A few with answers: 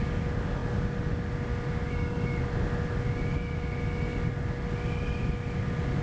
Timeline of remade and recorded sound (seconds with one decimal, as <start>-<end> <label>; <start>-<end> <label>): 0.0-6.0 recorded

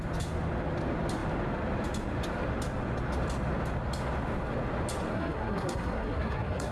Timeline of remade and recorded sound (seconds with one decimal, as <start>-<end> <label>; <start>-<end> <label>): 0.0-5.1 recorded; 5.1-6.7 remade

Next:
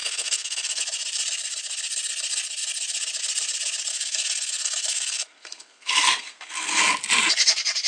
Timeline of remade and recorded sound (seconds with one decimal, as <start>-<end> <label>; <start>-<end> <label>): 0.0-0.8 remade; 0.8-3.9 recorded; 3.9-6.8 remade; 6.8-7.9 recorded

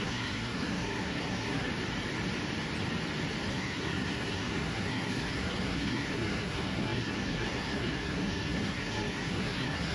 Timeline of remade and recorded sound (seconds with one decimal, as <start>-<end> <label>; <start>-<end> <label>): 0.0-1.7 remade; 1.7-3.5 recorded; 3.5-9.9 remade

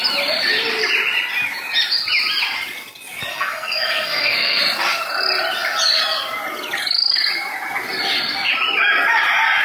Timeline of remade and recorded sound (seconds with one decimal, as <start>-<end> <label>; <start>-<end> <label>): 0.0-3.3 recorded; 3.3-4.6 remade; 4.6-9.6 recorded